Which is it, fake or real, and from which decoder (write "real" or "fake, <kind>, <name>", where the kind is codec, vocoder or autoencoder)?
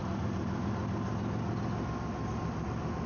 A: real